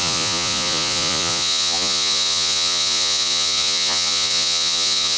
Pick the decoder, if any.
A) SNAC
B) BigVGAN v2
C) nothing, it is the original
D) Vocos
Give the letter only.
D